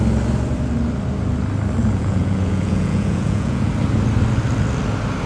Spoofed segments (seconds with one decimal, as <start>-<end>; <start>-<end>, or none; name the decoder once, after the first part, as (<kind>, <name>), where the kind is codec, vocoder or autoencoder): 1.8-3.7 (vocoder, Vocos)